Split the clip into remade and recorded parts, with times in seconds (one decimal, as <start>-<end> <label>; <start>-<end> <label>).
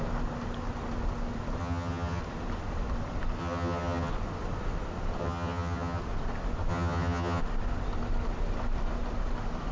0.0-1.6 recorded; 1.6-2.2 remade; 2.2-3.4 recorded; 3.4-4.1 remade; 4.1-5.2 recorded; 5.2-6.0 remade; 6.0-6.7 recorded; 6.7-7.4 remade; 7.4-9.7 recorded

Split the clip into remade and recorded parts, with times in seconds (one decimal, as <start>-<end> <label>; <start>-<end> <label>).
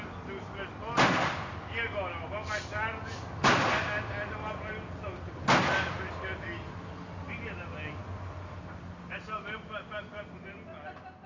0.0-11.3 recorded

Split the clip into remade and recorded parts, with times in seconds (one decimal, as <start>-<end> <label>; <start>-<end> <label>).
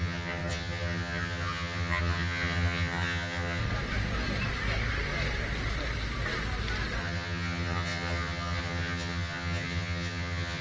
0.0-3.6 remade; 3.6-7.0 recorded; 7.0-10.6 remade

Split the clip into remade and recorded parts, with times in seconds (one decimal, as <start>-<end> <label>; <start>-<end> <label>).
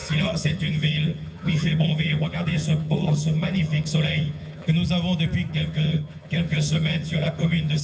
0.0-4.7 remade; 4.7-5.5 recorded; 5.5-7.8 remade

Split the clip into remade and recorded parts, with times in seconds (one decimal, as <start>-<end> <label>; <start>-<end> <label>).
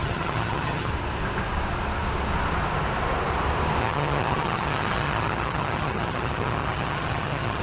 0.0-0.9 remade; 0.9-3.8 recorded; 3.8-7.6 remade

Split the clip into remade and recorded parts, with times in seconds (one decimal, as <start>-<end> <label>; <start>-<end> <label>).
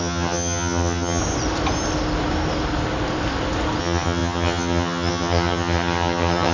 0.0-1.2 remade; 1.2-3.8 recorded; 3.8-6.5 remade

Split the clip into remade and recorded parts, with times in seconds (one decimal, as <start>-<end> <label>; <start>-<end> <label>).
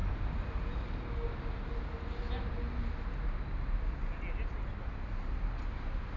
0.0-6.2 recorded